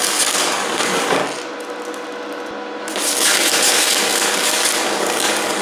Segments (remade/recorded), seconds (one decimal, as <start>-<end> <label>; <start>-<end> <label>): 0.0-1.2 remade; 1.2-2.8 recorded; 2.8-5.6 remade